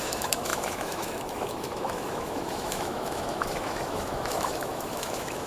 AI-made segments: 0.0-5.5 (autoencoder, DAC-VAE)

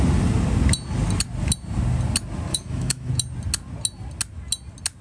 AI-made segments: 2.5-3.1 (autoencoder, DAC-VAE)

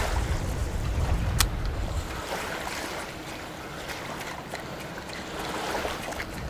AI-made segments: 0.6-3.2 (vocoder, BigVGAN v2)

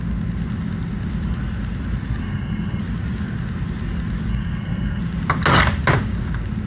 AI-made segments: 2.2-2.8 (codec, SNAC); 4.3-5.0